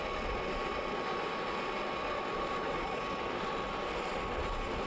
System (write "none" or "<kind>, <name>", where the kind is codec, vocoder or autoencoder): none